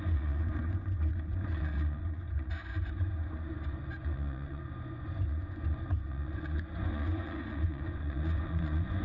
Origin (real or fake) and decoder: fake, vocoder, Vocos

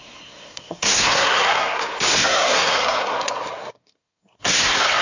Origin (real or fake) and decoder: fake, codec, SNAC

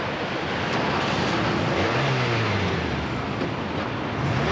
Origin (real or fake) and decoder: real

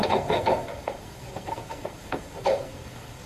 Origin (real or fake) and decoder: fake, codec, SNAC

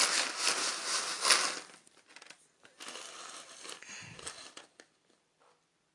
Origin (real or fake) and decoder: real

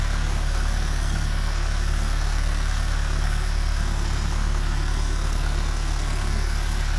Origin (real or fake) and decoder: fake, codec, SNAC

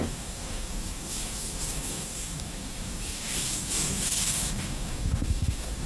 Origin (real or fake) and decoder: fake, codec, DAC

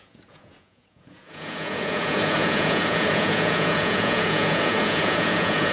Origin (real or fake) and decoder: fake, vocoder, Vocos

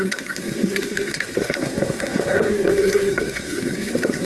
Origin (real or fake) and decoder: fake, codec, SNAC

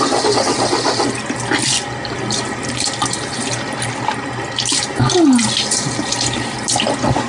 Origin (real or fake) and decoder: real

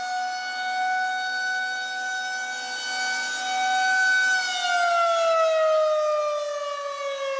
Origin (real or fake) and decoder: real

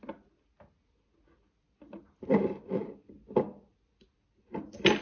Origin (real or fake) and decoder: real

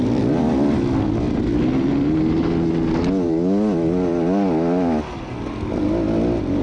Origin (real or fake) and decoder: real